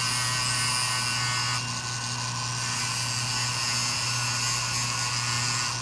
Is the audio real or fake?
real